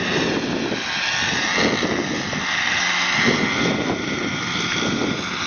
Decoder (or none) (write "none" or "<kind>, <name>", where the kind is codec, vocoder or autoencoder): none